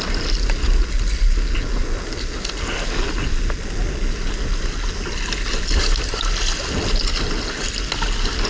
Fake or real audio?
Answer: real